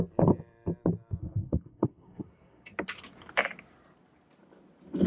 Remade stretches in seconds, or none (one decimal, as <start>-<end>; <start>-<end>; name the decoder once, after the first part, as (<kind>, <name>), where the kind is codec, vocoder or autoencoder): 1.2-2.7 (codec, SNAC)